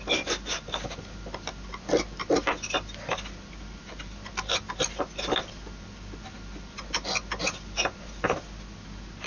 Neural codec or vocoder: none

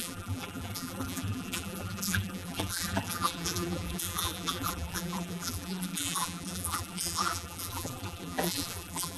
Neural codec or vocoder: vocoder, BigVGAN v2